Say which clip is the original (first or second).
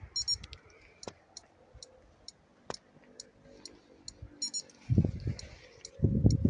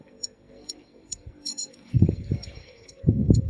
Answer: first